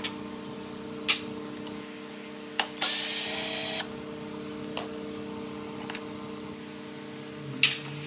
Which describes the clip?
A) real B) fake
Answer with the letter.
A